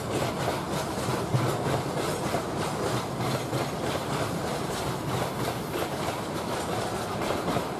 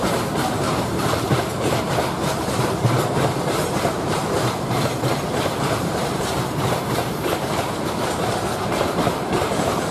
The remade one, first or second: second